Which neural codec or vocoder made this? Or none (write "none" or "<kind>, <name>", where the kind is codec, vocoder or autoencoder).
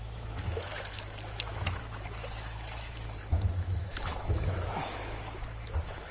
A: autoencoder, DAC-VAE